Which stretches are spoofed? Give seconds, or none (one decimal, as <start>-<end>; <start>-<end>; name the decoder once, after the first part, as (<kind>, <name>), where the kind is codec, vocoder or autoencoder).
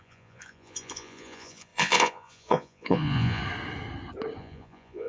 0.0-3.4 (vocoder, Vocos); 4.4-5.1